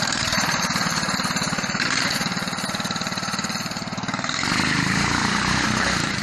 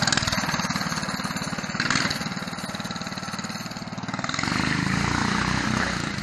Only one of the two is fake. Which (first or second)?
first